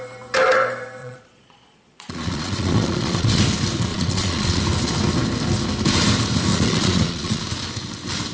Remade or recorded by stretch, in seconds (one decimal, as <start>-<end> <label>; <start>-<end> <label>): 0.0-1.0 recorded; 1.0-3.4 remade; 3.4-3.9 recorded; 3.9-4.6 remade; 4.6-6.5 recorded; 6.5-7.4 remade; 7.4-8.3 recorded

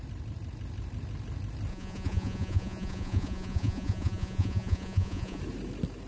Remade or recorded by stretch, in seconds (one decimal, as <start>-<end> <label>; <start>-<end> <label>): 0.0-1.7 recorded; 1.7-5.4 remade; 5.4-6.1 recorded